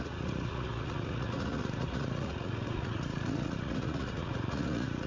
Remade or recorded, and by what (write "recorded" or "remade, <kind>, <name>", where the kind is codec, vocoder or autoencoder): remade, vocoder, Vocos